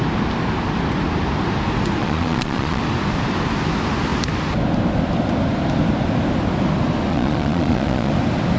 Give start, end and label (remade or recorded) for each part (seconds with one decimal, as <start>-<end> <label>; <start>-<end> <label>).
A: 0.0-2.0 recorded; 2.0-2.8 remade; 2.8-7.1 recorded; 7.1-8.1 remade; 8.1-8.6 recorded